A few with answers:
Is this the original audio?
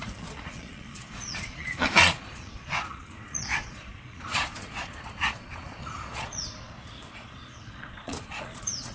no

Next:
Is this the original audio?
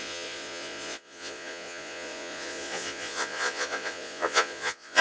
no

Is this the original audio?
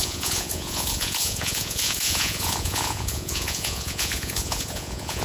no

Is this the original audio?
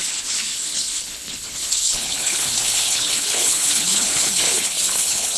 no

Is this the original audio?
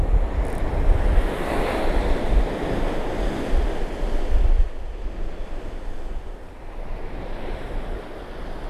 yes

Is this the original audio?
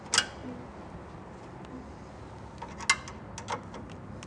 yes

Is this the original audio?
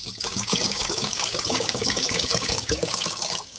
no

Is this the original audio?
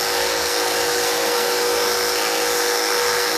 no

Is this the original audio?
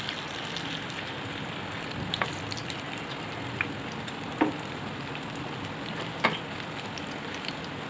yes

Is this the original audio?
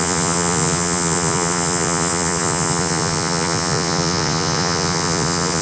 no